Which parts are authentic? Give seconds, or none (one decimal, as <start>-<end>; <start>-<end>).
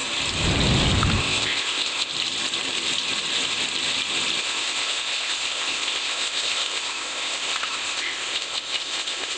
0.0-1.2; 2.1-4.4